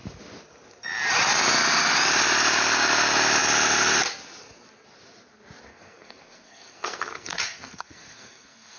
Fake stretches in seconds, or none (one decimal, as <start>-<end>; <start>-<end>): 5.7-8.8